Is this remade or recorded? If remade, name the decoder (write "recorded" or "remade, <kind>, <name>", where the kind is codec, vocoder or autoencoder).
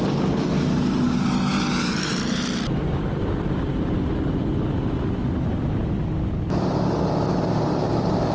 recorded